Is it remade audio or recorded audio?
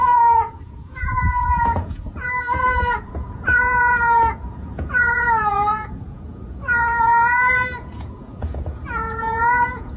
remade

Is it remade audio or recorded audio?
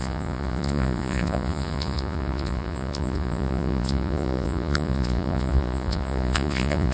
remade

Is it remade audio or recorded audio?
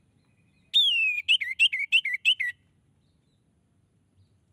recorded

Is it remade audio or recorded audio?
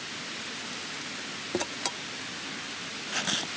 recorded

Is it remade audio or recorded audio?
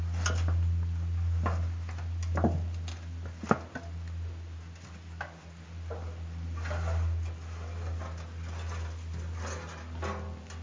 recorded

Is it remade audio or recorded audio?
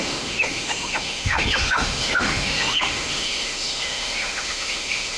remade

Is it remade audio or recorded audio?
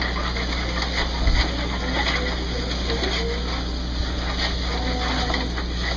recorded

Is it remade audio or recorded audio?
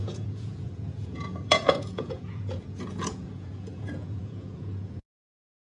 remade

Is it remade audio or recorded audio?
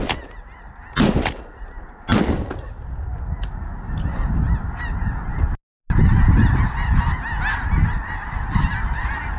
recorded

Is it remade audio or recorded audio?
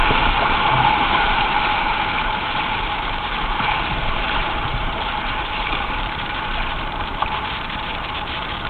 remade